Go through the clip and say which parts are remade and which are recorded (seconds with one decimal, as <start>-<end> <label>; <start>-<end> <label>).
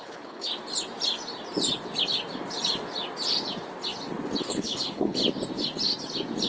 0.0-0.5 remade; 0.5-4.4 recorded; 4.4-5.2 remade; 5.2-6.5 recorded